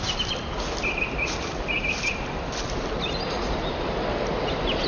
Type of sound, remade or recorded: recorded